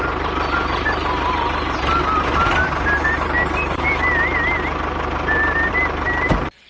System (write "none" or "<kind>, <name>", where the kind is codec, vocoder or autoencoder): none